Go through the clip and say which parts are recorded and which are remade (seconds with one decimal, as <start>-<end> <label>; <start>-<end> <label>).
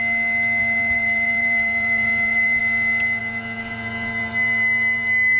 0.0-0.6 recorded; 0.6-2.6 remade; 2.6-5.4 recorded